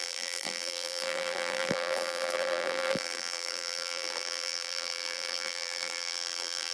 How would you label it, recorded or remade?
remade